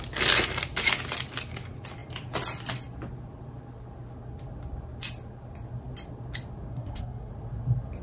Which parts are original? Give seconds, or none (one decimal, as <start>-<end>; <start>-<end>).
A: 0.0-6.7; 7.3-8.0